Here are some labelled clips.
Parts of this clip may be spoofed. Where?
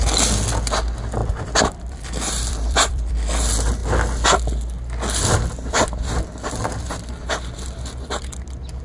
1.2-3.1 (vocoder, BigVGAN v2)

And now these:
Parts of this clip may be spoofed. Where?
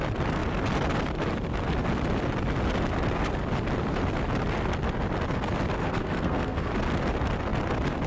5.8-6.7 (codec, SNAC)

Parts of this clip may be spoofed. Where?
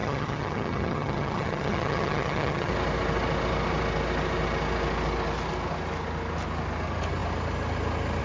0.0-2.7 (vocoder, HiFi-GAN)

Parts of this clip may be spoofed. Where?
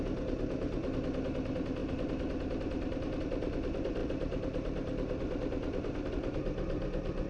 none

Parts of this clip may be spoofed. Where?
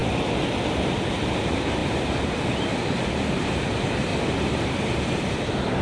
1.1-1.8 (vocoder, BigVGAN v2); 2.8-4.1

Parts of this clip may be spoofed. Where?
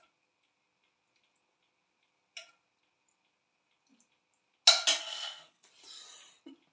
5.0-5.7 (codec, SNAC)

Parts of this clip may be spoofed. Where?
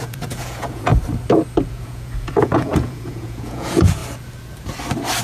0.0-0.9 (vocoder, Vocos); 1.7-4.0